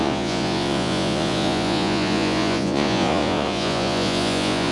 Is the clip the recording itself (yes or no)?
no